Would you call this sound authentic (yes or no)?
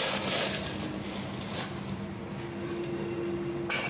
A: yes